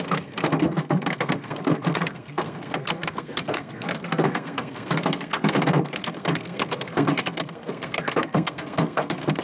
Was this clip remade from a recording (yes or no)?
yes